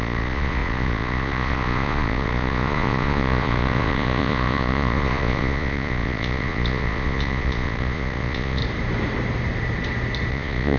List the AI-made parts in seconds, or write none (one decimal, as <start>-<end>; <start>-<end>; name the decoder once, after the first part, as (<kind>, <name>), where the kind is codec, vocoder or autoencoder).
0.0-8.6 (vocoder, Vocos); 10.3-10.8